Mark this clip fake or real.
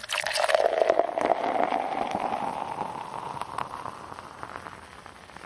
real